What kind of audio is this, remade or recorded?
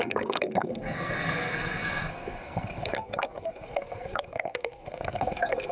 remade